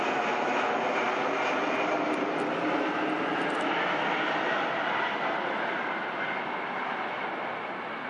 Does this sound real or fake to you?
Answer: real